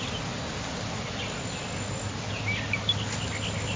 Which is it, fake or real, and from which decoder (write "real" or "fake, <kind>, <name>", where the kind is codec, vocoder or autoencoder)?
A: real